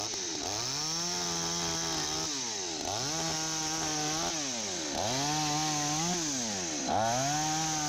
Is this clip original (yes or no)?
yes